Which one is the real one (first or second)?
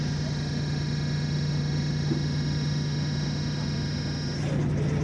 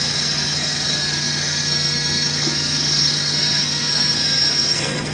first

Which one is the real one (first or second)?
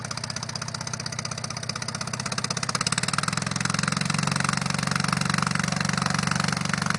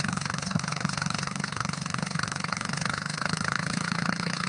first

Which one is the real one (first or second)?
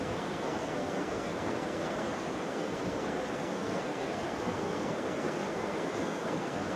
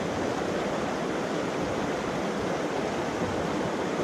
second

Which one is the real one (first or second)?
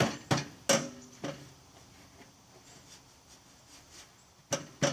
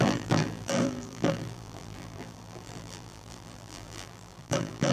first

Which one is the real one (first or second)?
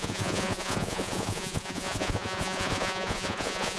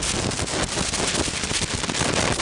second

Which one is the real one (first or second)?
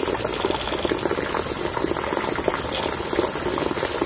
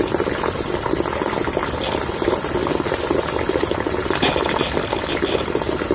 first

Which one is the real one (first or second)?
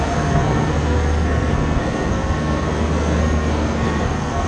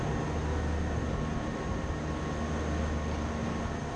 second